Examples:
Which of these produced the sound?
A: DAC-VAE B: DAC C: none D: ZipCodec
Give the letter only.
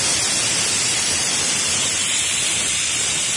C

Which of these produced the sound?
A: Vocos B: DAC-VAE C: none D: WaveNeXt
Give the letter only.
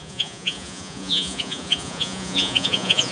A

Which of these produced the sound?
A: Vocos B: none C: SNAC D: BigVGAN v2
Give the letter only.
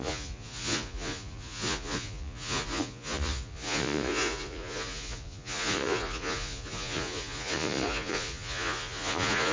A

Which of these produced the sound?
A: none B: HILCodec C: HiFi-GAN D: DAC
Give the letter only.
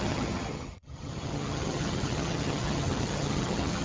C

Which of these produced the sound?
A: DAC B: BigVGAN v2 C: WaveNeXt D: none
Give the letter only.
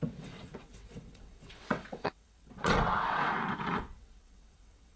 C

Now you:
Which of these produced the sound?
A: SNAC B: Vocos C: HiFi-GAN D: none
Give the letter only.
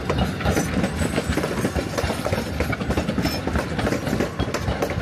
D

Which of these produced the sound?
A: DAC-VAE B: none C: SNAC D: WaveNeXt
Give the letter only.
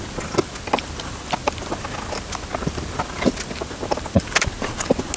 B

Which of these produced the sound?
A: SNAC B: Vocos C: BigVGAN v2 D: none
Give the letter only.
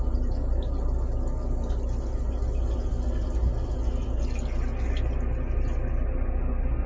D